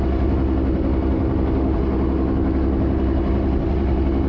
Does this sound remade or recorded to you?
recorded